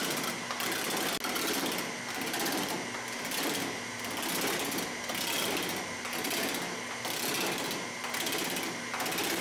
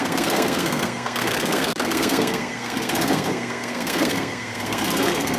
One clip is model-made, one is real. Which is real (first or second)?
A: first